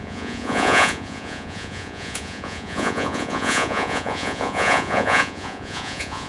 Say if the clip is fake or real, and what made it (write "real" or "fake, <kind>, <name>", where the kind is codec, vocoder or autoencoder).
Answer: fake, vocoder, Vocos